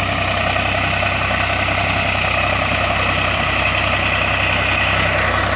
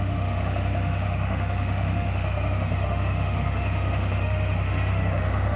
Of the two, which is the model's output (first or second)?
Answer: second